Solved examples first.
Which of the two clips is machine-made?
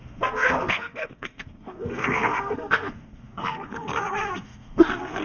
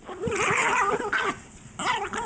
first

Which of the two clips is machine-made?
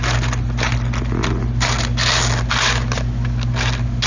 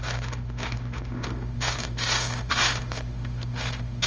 second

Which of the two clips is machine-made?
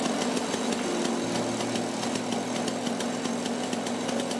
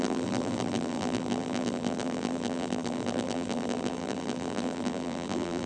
second